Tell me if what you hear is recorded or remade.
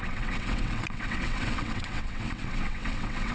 remade